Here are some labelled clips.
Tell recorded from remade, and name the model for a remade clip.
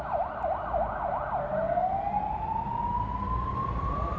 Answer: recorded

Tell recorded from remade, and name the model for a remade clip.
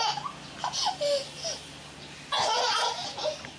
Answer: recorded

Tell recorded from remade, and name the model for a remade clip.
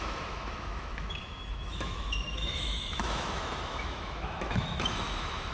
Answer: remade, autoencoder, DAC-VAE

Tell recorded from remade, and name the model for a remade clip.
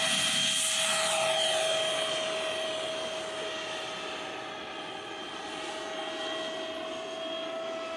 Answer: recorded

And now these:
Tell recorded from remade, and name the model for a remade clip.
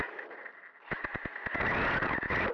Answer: recorded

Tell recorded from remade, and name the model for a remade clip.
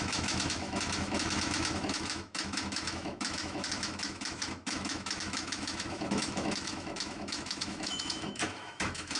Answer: remade, autoencoder, DAC-VAE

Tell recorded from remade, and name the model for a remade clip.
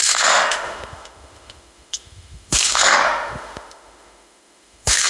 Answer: remade, autoencoder, DAC-VAE